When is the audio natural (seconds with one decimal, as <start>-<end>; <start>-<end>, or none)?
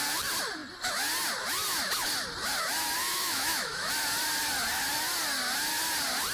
0.0-3.0; 3.9-6.3